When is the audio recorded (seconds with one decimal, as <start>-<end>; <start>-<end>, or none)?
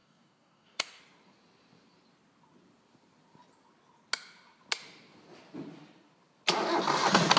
1.0-7.4